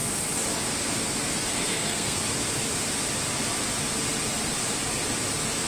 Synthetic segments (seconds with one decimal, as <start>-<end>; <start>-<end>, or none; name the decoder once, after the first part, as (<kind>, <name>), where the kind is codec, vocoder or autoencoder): 1.5-2.2 (codec, SNAC)